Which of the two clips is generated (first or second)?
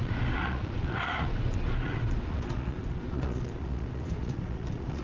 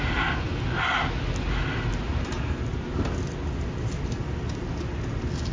first